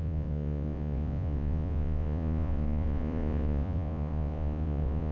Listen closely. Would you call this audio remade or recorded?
remade